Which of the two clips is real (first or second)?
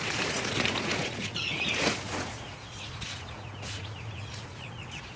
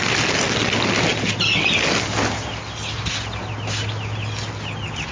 second